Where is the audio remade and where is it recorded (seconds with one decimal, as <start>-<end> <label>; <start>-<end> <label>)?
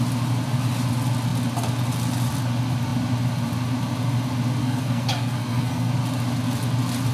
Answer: 0.0-4.6 recorded; 4.6-5.9 remade; 5.9-7.1 recorded